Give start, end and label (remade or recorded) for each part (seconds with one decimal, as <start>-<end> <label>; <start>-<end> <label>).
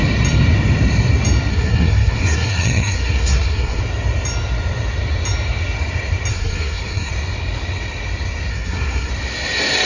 0.0-1.5 recorded; 1.5-3.8 remade; 3.8-6.3 recorded; 6.3-7.1 remade; 7.1-8.5 recorded; 8.5-9.1 remade; 9.1-9.9 recorded